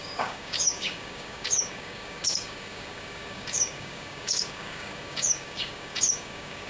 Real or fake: fake